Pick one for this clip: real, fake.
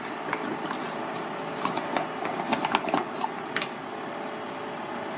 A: real